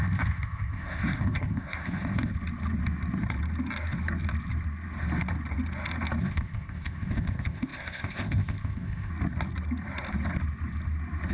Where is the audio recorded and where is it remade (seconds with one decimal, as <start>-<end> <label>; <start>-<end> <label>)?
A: 0.0-2.3 remade; 2.3-6.2 recorded; 6.2-9.1 remade; 9.1-11.3 recorded